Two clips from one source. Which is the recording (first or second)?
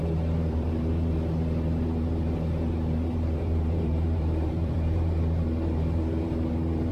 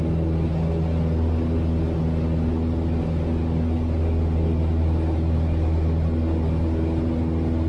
second